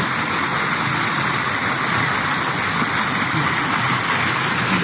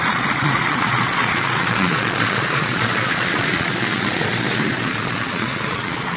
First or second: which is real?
first